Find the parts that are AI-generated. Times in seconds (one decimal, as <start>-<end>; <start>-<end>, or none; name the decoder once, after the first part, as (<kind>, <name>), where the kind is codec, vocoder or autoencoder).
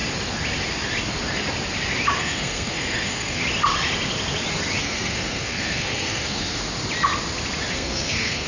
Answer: 2.2-3.4 (codec, SNAC); 4.8-6.6; 7.7-8.5